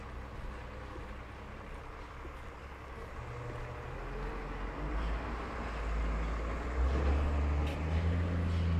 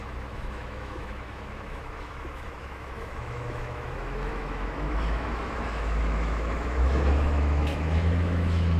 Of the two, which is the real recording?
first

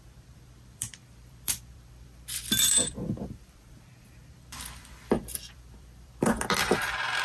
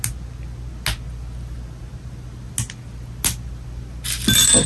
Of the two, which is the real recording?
second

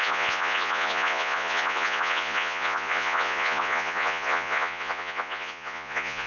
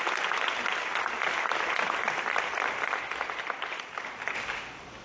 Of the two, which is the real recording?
second